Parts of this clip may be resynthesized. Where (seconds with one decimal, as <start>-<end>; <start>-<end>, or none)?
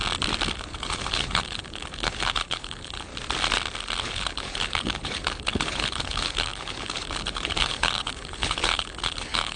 0.5-3.1; 4.0-9.6